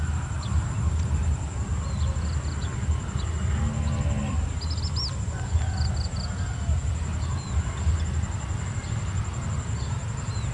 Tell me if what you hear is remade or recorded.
recorded